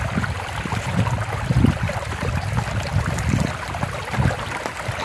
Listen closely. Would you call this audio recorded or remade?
recorded